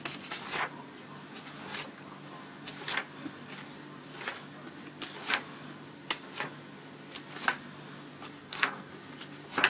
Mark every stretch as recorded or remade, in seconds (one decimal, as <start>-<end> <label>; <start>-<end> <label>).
0.0-8.4 recorded; 8.4-8.9 remade; 8.9-9.7 recorded